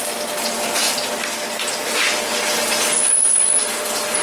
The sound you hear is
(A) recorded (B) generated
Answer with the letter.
A